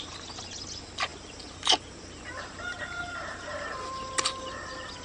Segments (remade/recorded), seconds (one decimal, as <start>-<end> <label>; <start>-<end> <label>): 0.0-5.0 recorded